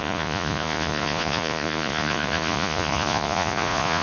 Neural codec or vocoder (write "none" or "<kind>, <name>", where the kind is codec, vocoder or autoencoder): vocoder, Vocos